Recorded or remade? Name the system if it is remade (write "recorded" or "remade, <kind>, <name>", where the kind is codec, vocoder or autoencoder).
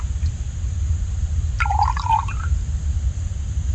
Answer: recorded